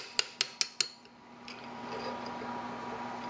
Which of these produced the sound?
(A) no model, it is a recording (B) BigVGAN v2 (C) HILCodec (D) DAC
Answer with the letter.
A